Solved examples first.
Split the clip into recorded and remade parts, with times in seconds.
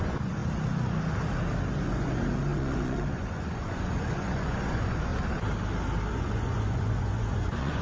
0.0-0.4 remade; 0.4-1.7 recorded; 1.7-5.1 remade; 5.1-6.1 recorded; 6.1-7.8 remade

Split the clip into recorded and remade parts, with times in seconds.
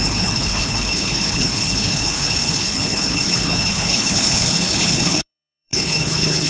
0.0-6.5 remade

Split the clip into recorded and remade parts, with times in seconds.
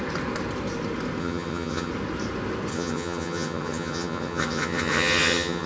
0.0-1.2 recorded; 1.2-1.9 remade; 1.9-2.7 recorded; 2.7-5.7 remade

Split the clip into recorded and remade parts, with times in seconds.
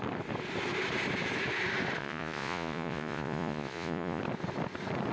0.0-2.0 recorded; 2.0-4.2 remade; 4.2-5.1 recorded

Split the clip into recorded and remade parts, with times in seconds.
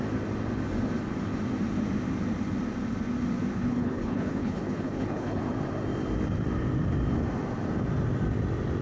0.0-3.5 recorded; 3.5-5.4 remade; 5.4-8.8 recorded